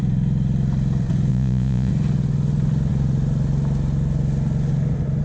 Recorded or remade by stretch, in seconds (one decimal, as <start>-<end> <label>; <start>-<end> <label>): 0.0-1.3 recorded; 1.3-1.9 remade; 1.9-5.2 recorded